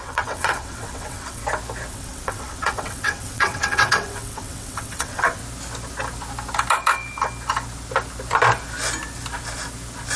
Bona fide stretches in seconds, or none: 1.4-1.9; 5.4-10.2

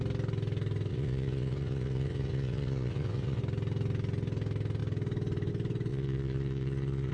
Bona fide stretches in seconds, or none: 0.0-0.9; 3.4-5.9

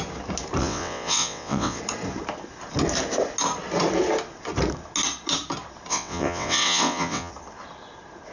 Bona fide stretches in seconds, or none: 0.0-0.6; 1.8-5.9; 7.3-8.3